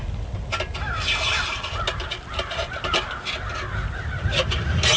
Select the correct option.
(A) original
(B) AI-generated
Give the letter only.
A